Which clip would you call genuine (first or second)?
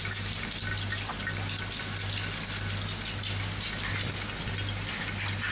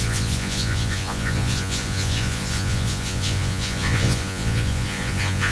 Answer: first